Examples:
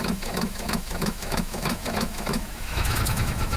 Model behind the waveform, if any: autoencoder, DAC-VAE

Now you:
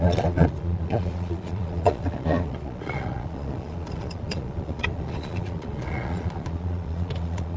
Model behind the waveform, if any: vocoder, Vocos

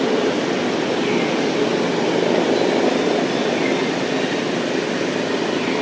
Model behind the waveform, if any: none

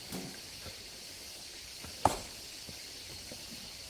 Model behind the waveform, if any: none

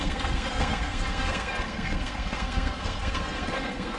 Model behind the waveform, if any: codec, SNAC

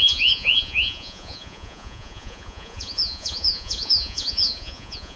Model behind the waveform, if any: vocoder, Vocos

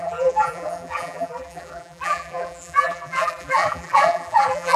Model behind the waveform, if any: vocoder, BigVGAN v2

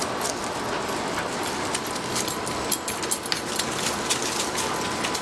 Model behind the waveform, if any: none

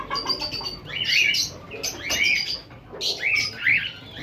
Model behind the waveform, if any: none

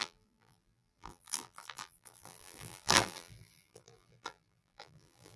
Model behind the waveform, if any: vocoder, BigVGAN v2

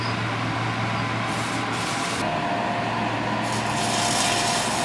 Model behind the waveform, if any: none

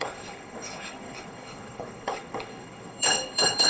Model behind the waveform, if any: codec, HILCodec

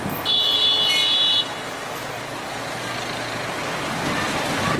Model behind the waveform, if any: none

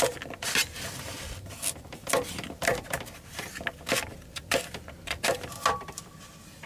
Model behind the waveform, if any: none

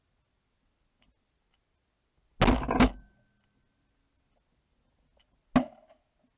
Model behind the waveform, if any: none